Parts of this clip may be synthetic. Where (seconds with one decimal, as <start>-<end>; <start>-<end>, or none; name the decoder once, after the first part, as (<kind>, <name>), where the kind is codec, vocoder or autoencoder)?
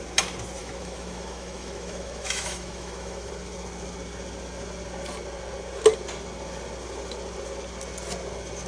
0.6-3.3 (autoencoder, DAC-VAE)